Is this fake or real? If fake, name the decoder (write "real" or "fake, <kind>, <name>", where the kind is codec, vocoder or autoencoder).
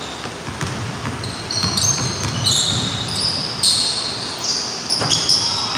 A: real